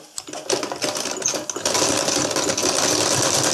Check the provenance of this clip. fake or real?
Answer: real